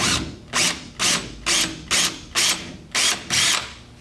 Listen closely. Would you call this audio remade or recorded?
recorded